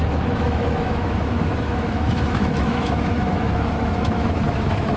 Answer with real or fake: fake